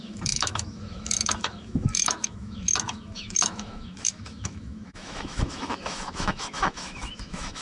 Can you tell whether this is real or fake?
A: fake